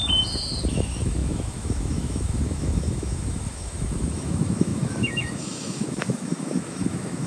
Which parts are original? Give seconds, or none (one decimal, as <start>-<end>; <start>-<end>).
0.0-0.7